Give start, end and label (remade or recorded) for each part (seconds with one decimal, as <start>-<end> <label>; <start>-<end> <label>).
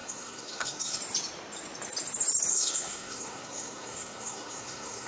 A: 0.0-1.0 remade; 1.0-2.5 recorded; 2.5-5.1 remade